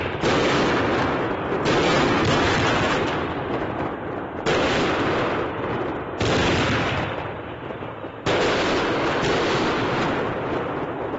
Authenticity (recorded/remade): recorded